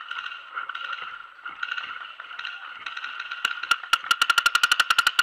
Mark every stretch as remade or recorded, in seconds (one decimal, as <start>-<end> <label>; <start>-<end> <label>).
0.0-5.2 recorded